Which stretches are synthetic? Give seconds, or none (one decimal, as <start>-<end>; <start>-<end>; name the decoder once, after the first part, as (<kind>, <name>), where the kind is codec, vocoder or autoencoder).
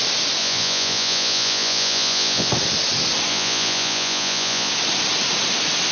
0.4-2.5 (vocoder, Vocos); 3.3-4.7